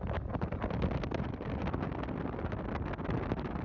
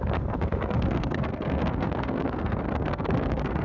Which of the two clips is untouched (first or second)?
first